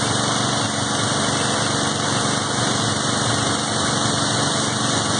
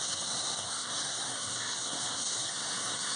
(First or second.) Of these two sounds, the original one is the first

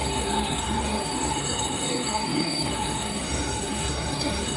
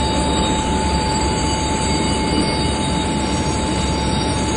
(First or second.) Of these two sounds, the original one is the second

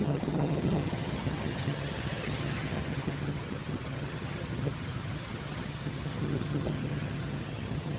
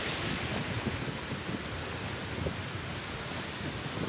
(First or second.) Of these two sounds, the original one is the second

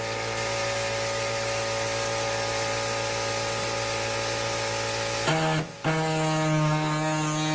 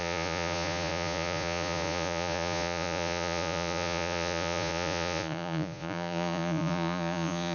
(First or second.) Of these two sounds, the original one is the first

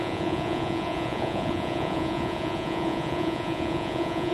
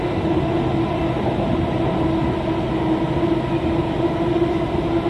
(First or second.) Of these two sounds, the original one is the second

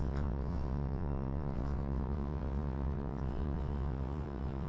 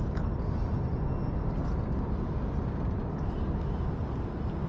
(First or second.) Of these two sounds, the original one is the second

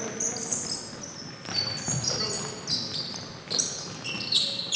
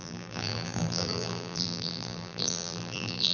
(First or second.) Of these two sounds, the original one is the first